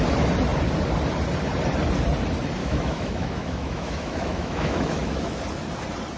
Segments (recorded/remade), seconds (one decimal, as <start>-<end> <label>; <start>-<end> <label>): 0.0-2.6 recorded; 2.6-5.4 remade; 5.4-6.2 recorded

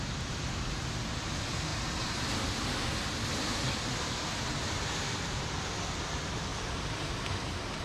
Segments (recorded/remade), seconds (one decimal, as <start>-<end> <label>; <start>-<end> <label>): 0.0-7.8 recorded

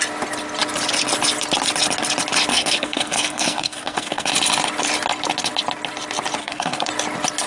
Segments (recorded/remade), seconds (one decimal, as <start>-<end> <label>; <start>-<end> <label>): 0.0-2.5 recorded; 2.5-4.3 remade; 4.3-6.4 recorded; 6.4-6.9 remade; 6.9-7.5 recorded

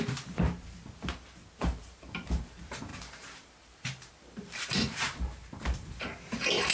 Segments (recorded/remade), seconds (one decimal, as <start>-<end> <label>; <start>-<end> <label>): 0.0-1.6 recorded; 1.6-2.4 remade; 2.4-2.9 recorded; 2.9-6.2 remade; 6.2-6.7 recorded

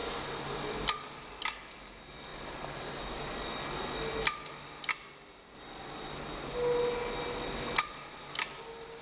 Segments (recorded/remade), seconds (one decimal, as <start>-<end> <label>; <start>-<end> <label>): 0.0-9.0 recorded

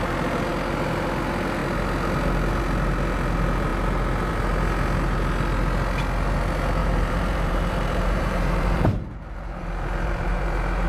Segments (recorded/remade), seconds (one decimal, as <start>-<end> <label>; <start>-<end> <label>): 0.0-6.8 recorded; 6.8-10.9 remade

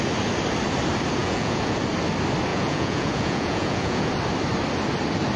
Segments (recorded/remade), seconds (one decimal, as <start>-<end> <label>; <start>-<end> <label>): 0.0-1.2 recorded; 1.2-1.8 remade; 1.8-2.5 recorded; 2.5-4.1 remade; 4.1-5.4 recorded

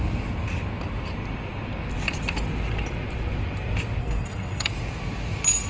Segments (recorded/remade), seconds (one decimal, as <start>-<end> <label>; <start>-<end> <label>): 0.0-4.0 recorded; 4.0-4.7 remade; 4.7-5.7 recorded